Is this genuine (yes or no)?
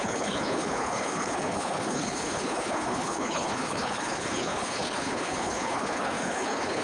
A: no